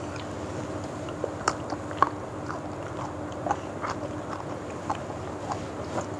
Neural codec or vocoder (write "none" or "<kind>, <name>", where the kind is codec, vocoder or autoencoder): none